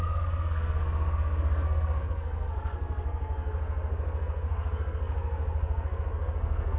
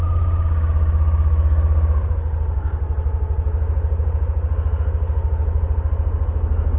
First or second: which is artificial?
first